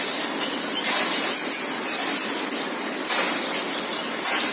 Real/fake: real